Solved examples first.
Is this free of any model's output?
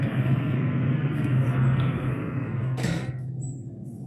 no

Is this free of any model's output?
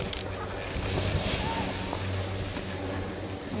yes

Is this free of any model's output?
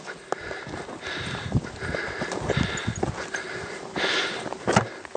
yes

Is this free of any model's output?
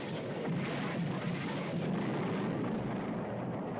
yes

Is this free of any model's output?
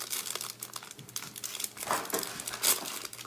yes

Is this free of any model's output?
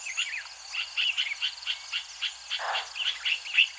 yes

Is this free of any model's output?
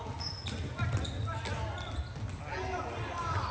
yes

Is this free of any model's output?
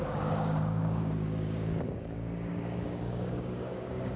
no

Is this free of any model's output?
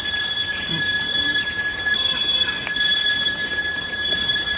yes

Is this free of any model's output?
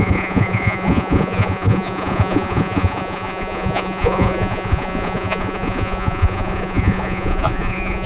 no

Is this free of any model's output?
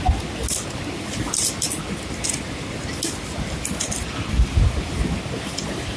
yes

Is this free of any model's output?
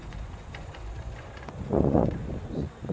no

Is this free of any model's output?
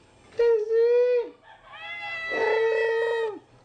yes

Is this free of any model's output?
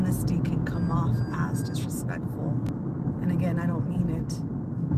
yes